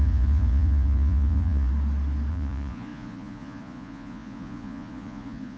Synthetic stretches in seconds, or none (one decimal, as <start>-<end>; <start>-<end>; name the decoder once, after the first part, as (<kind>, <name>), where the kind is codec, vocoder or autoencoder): 0.0-1.7 (vocoder, Vocos); 2.3-5.6